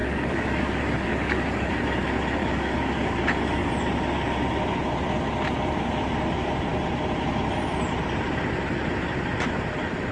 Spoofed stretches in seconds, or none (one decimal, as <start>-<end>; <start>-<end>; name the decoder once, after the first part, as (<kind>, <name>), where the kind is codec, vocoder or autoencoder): 0.0-1.7 (codec, DAC); 2.4-3.7